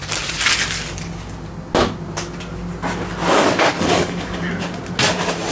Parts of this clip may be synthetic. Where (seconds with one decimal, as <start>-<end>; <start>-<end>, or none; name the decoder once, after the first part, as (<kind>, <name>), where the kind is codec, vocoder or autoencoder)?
3.3-4.8 (codec, DAC)